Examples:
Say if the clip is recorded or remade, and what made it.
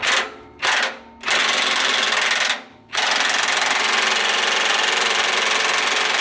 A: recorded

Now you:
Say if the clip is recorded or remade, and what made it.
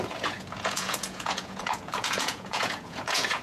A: remade, vocoder, Vocos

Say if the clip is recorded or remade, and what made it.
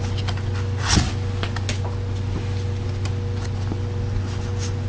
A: recorded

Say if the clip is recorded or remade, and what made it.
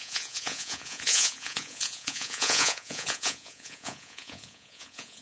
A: remade, vocoder, Vocos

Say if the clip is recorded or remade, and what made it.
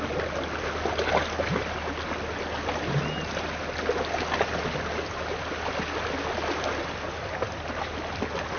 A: recorded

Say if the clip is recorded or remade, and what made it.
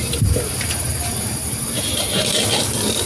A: recorded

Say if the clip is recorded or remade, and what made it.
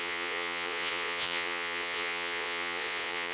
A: remade, vocoder, Vocos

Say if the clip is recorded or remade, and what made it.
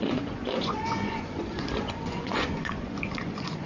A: remade, vocoder, Vocos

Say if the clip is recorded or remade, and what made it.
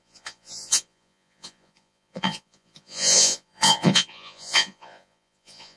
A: remade, vocoder, Vocos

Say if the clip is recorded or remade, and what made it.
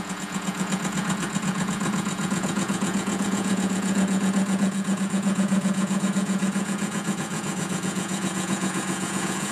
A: remade, vocoder, Vocos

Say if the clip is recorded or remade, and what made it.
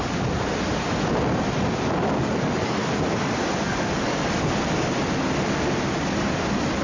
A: recorded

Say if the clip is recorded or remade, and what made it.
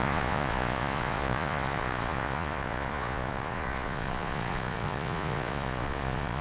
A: remade, vocoder, Vocos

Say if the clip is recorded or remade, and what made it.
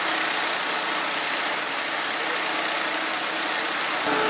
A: recorded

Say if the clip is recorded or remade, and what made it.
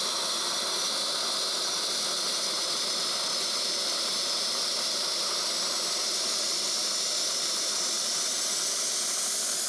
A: recorded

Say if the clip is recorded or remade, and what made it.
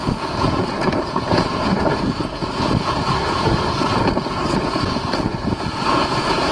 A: remade, vocoder, Vocos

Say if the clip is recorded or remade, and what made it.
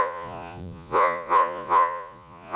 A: remade, vocoder, Vocos